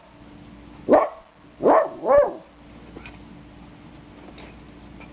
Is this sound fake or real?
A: real